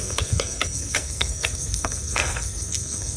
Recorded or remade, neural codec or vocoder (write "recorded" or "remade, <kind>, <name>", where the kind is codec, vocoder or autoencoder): remade, codec, SNAC